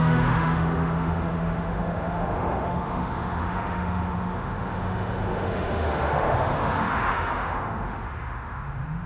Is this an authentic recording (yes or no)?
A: no